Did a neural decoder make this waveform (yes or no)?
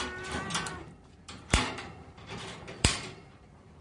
yes